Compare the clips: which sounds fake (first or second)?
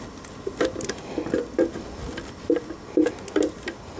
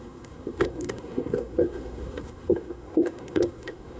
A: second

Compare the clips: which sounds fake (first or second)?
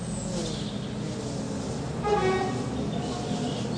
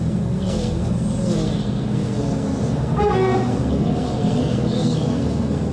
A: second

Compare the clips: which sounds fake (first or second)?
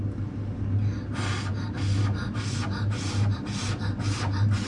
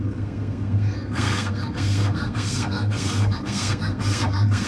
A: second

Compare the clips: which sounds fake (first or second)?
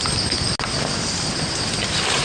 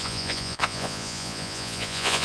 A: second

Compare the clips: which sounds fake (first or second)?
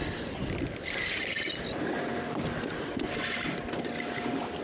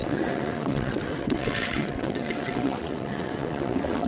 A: second